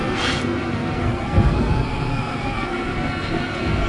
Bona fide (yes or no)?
no